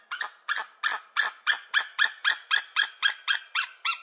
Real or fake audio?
real